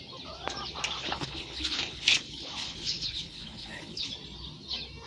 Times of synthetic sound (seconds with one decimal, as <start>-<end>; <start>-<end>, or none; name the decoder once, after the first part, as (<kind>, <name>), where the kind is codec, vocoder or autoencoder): 1.0-4.1 (codec, HILCodec)

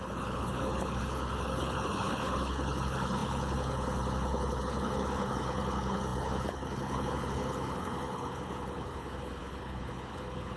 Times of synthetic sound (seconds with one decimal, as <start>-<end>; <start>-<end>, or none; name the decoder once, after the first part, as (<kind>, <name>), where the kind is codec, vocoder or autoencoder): 0.0-10.6 (codec, HILCodec)

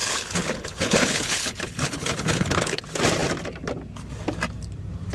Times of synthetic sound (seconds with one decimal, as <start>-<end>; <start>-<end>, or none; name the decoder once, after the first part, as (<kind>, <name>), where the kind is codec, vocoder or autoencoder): 0.0-2.8 (codec, HILCodec)

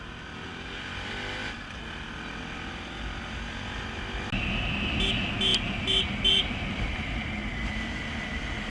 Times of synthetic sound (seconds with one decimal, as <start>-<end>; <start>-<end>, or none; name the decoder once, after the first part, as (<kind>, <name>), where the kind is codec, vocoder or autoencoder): none

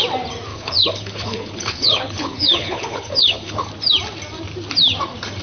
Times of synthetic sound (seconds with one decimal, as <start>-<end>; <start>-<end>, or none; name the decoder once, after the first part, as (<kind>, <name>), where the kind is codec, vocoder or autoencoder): 0.5-3.7 (codec, HILCodec)